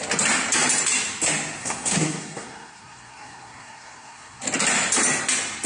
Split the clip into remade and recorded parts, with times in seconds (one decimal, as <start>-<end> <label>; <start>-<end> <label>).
0.0-1.6 recorded; 1.6-4.4 remade; 4.4-5.7 recorded